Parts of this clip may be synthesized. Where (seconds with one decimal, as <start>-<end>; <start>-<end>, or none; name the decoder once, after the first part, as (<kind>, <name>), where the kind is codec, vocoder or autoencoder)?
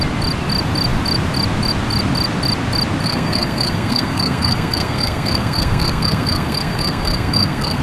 3.0-7.8 (codec, SNAC)